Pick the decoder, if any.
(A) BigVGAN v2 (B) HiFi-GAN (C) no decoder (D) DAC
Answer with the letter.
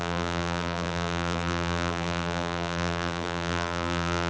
A